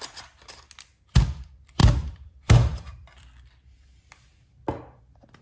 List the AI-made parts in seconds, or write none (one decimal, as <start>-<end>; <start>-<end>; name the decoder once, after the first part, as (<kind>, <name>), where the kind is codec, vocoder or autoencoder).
none